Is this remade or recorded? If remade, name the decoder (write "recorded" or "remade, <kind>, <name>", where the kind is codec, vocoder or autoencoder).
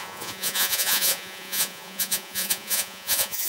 remade, vocoder, Vocos